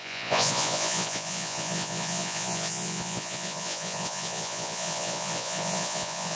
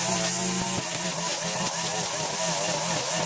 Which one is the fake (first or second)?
first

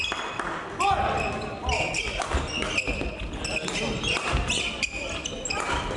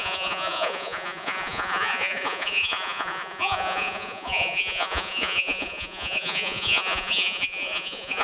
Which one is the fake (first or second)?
second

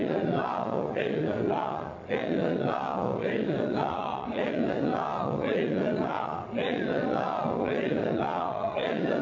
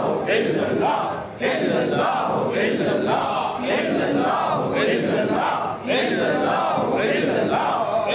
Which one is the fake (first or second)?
first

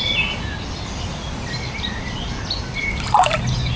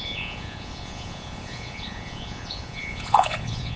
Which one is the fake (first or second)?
second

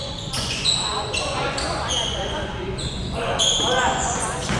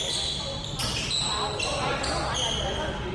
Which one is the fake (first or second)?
first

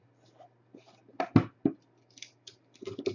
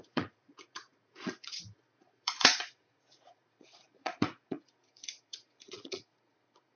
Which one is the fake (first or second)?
second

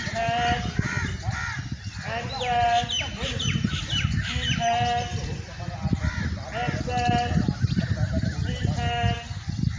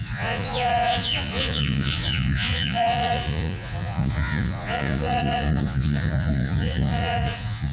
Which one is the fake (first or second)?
second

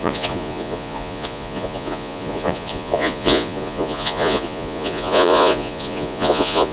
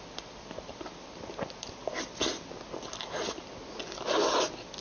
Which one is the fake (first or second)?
first